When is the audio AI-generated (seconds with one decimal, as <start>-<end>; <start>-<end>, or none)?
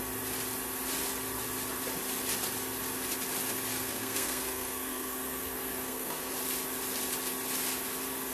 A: 3.7-6.3